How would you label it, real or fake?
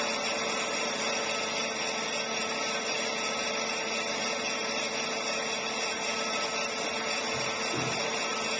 real